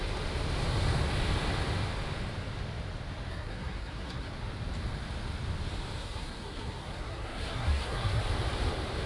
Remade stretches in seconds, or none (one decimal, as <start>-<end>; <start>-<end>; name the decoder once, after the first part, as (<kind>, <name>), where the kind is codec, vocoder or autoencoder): 3.3-4.3 (codec, SNAC); 6.0-8.2